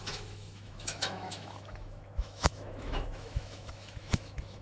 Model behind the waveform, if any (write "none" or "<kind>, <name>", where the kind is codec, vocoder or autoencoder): autoencoder, DAC-VAE